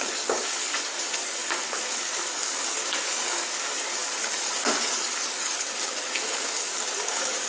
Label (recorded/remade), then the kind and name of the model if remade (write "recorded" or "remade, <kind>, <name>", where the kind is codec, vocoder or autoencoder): remade, codec, DAC